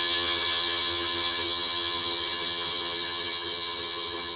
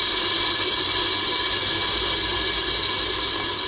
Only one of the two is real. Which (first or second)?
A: second